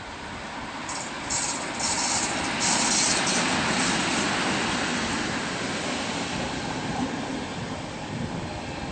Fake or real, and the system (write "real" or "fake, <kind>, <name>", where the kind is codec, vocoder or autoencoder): real